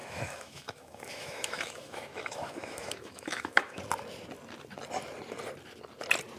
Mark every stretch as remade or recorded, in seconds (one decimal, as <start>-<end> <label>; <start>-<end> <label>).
0.0-3.8 remade; 3.8-6.4 recorded